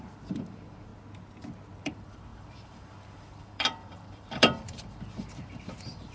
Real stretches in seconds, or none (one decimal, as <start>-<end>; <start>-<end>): 0.9-1.8